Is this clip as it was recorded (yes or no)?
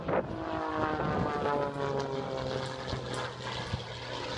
yes